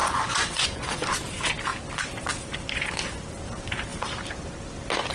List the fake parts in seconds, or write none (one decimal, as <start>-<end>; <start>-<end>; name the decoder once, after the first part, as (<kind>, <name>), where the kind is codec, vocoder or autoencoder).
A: 0.0-1.1 (vocoder, Vocos)